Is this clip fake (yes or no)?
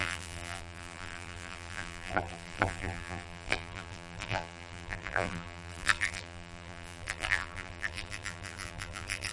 yes